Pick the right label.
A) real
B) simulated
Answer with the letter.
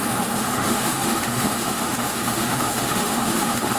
B